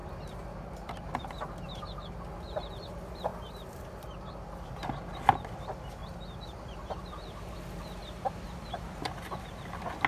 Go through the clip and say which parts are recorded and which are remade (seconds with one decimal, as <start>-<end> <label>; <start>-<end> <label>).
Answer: 0.0-1.2 remade; 1.2-3.3 recorded; 3.3-4.7 remade; 4.7-6.0 recorded; 6.0-9.4 remade; 9.4-10.1 recorded